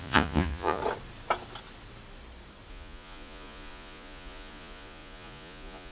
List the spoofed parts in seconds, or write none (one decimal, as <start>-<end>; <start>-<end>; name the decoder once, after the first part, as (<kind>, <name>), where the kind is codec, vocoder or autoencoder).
0.0-0.8 (vocoder, Vocos); 2.7-5.9